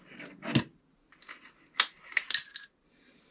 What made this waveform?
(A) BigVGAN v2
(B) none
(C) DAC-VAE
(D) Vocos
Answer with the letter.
B